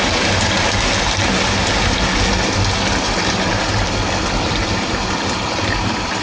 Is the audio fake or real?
real